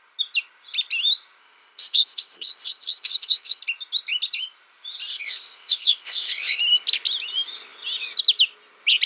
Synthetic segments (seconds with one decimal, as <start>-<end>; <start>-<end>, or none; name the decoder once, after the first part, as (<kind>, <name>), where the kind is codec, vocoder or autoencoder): 1.4-3.6 (codec, ZipCodec); 5.1-6.6